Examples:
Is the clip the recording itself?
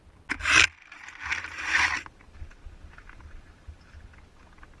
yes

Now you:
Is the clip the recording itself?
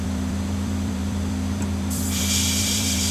no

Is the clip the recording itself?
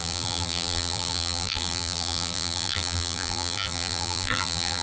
no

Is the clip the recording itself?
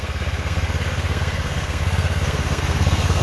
no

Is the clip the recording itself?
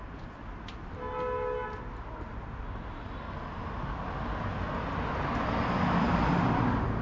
yes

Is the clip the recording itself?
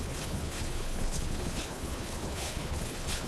no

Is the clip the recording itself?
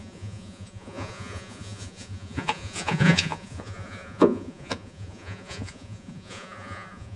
no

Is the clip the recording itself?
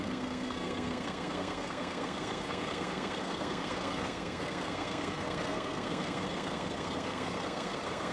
no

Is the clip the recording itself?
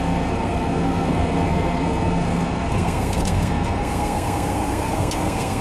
no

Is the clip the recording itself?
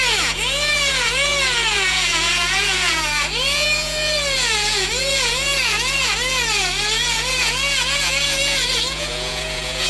no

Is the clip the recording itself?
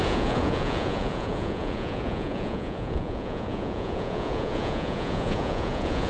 no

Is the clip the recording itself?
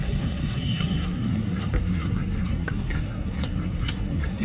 no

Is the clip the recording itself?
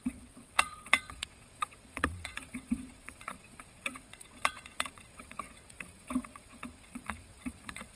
no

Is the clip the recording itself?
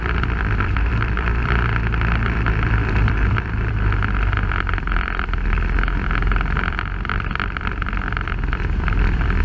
no